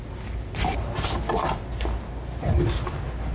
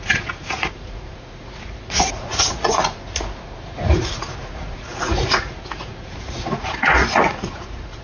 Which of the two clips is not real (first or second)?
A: second